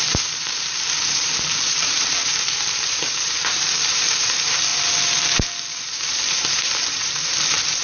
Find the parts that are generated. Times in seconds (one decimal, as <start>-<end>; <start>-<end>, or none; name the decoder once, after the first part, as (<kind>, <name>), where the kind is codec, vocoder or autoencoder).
0.0-4.7 (vocoder, BigVGAN v2); 5.8-7.8